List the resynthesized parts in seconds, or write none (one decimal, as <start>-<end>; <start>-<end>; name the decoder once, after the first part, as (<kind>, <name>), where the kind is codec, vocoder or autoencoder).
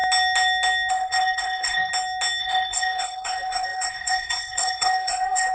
0.9-1.9 (codec, SNAC); 2.4-5.5